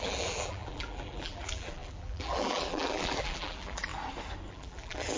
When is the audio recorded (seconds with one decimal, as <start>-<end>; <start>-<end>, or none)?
3.9-4.5